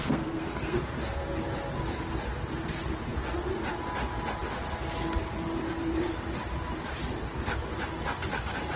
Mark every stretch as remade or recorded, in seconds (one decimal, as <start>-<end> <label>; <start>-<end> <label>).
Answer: 0.0-0.8 remade; 0.8-8.8 recorded